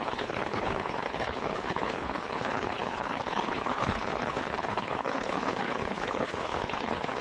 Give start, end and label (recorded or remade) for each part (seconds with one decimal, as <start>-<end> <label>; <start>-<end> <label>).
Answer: 0.0-7.2 remade